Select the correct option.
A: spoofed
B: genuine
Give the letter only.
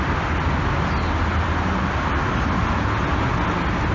B